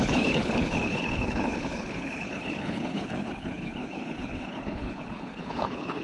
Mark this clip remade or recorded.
remade